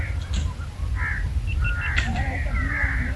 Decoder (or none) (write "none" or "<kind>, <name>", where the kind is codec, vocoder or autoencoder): none